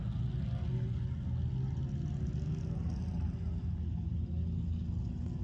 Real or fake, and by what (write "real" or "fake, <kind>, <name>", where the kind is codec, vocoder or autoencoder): real